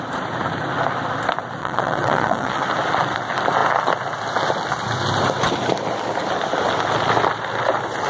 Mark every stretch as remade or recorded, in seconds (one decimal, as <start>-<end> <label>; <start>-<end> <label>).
0.0-1.6 recorded; 1.6-2.6 remade; 2.6-8.1 recorded